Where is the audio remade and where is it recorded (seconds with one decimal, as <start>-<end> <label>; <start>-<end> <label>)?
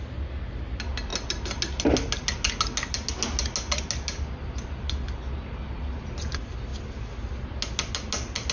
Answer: 0.0-8.5 recorded